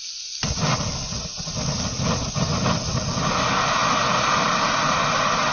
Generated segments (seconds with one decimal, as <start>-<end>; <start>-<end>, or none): none